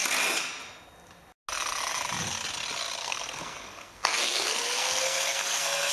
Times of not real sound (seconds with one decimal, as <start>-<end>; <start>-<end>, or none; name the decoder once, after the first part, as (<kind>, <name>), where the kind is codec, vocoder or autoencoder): 3.0-5.9 (codec, SNAC)